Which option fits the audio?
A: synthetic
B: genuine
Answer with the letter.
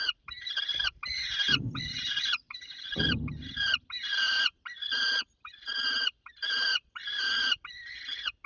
A